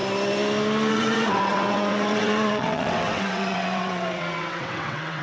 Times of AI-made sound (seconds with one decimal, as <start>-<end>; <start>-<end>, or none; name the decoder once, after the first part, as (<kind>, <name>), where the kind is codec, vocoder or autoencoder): 0.9-5.2 (vocoder, WaveNeXt)